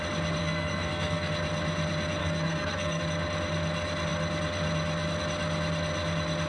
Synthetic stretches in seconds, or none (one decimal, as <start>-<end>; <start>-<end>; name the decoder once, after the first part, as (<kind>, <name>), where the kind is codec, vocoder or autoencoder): 0.4-1.3 (codec, SNAC); 2.2-3.0